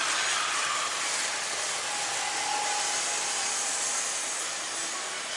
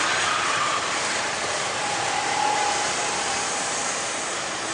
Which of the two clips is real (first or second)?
first